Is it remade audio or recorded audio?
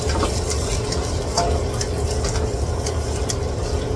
recorded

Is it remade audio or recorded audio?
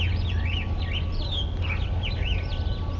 recorded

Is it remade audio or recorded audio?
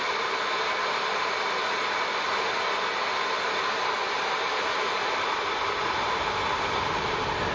recorded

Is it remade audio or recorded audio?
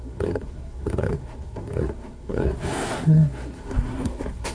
remade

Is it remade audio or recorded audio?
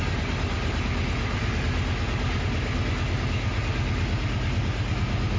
recorded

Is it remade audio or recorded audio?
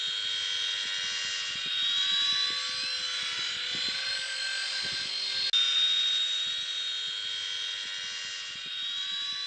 recorded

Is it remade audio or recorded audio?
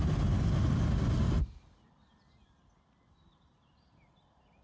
recorded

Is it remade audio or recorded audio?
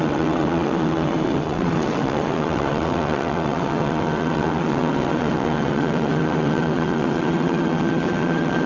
remade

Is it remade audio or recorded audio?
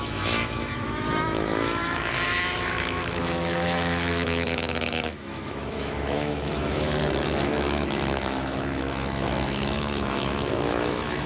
remade